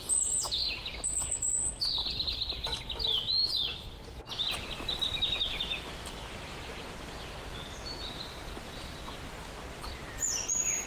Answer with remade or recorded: recorded